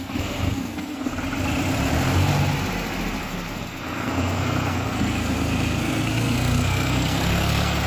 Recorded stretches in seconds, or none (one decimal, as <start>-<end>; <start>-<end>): 1.1-3.2